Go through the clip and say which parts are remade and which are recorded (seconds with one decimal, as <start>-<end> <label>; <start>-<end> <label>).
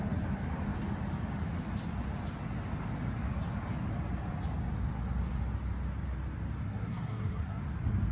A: 0.0-6.6 recorded; 6.6-7.6 remade; 7.6-8.1 recorded